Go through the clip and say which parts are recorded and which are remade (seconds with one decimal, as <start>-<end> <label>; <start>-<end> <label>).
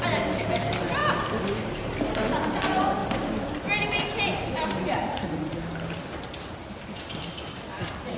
0.0-5.0 recorded; 5.0-5.6 remade; 5.6-8.2 recorded